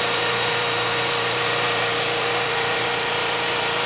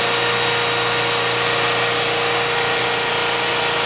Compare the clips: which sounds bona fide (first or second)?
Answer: second